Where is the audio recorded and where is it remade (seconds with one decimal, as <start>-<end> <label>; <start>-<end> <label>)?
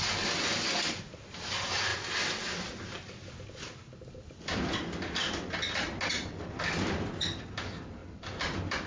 0.0-8.0 recorded; 8.0-8.9 remade